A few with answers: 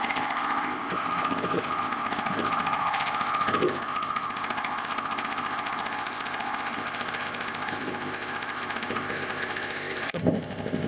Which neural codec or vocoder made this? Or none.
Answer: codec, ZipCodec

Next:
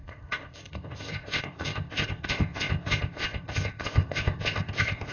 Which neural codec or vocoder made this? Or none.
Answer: codec, ZipCodec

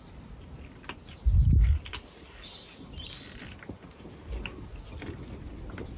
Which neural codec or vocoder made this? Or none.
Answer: none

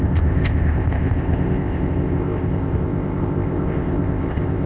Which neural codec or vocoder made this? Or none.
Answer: codec, ZipCodec